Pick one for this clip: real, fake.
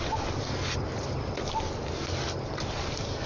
real